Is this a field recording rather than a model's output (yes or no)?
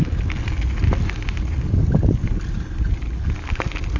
yes